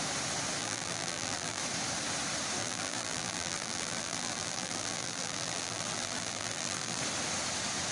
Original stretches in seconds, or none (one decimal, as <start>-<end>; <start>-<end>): 0.0-0.6; 1.6-2.6; 7.0-7.9